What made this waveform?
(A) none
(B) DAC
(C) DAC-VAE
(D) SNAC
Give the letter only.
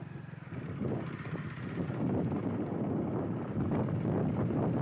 A